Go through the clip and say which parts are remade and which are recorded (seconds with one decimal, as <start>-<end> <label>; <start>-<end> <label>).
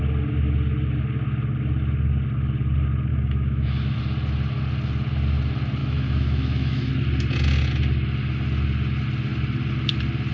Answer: 0.0-3.1 recorded; 3.1-4.0 remade; 4.0-5.8 recorded; 5.8-6.9 remade; 6.9-10.3 recorded